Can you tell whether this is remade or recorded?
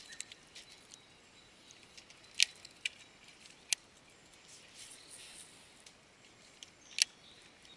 recorded